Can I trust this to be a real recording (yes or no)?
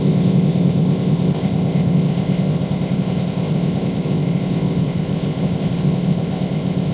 no